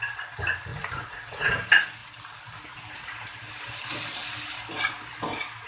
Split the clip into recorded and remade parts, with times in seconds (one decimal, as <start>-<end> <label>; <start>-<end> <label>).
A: 0.0-0.7 recorded; 0.7-1.5 remade; 1.5-5.7 recorded